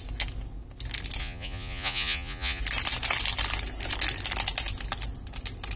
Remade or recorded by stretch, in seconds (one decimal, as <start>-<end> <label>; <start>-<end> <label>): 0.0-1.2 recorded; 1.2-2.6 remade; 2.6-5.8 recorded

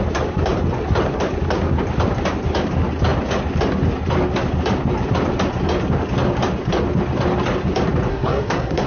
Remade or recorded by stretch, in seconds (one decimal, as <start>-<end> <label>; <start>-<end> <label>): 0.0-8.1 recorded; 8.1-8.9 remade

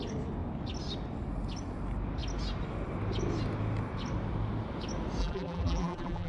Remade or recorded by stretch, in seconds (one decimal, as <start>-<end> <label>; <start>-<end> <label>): 0.0-5.2 recorded; 5.2-6.3 remade

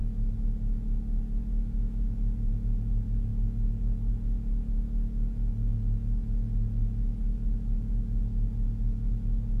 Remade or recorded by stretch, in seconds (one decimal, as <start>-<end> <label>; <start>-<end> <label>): 0.0-1.4 recorded; 1.4-9.6 remade